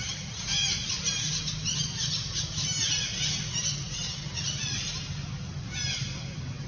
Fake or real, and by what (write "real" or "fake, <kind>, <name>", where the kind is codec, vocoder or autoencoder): real